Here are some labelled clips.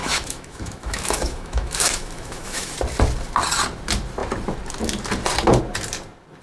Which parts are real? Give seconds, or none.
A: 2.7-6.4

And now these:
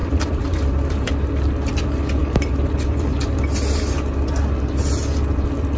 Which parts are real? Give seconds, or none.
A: 1.1-2.2; 3.4-5.8